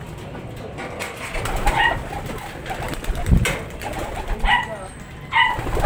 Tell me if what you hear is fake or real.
real